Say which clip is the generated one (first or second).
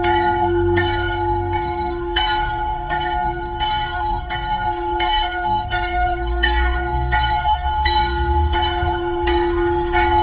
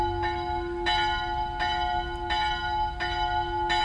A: first